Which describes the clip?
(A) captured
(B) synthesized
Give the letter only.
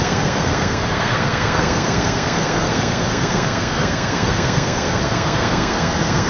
B